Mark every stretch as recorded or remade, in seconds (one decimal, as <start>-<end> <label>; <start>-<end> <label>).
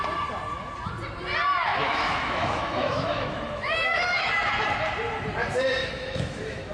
0.0-1.7 recorded; 1.7-4.3 remade; 4.3-5.8 recorded; 5.8-6.7 remade